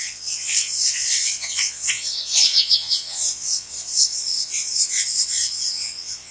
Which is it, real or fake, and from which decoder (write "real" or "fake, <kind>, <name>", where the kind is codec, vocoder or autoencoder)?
fake, vocoder, WaveNeXt